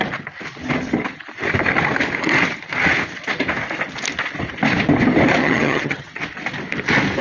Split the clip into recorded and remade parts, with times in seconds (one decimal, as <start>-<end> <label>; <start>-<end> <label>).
0.0-5.4 recorded; 5.4-6.2 remade; 6.2-7.2 recorded